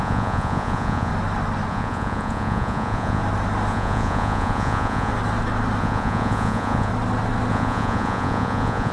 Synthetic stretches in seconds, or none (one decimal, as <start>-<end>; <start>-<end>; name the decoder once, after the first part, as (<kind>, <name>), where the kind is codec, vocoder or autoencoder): 0.0-1.1 (vocoder, Vocos); 1.7-3.2; 3.7-5.1; 5.8-6.9; 7.5-8.9